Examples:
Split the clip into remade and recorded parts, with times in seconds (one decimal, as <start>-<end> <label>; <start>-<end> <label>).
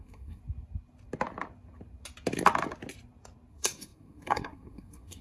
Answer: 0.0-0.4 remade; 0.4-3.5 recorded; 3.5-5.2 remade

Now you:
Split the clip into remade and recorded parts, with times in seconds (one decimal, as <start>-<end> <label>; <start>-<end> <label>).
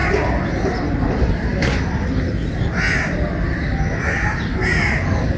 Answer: 0.0-5.4 recorded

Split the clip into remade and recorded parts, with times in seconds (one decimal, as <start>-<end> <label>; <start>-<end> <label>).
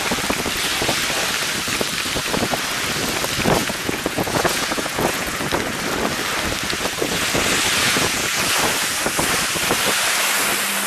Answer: 0.0-3.6 recorded; 3.6-5.4 remade; 5.4-7.8 recorded; 7.8-8.4 remade; 8.4-10.9 recorded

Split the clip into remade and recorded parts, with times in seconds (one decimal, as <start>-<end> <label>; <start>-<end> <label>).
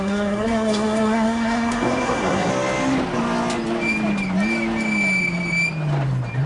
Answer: 0.0-2.5 remade; 2.5-6.5 recorded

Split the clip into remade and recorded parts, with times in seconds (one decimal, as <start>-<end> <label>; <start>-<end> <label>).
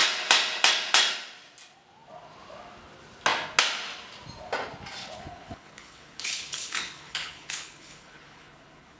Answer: 0.0-5.0 recorded; 5.0-9.0 remade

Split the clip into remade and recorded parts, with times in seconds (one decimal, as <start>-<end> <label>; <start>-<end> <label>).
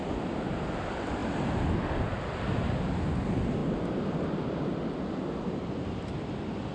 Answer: 0.0-6.7 recorded